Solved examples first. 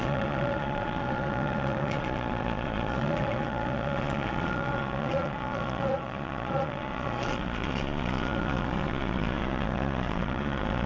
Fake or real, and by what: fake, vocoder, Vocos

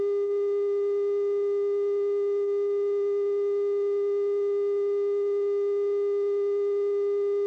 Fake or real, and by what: real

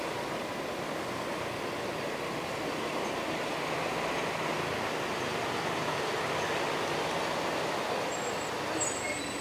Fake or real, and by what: real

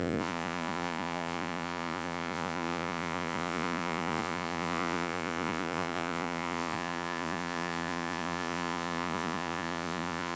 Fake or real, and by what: fake, vocoder, Vocos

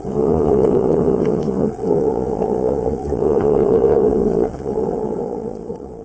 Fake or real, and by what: fake, vocoder, Vocos